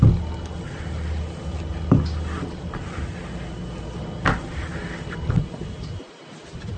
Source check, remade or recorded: recorded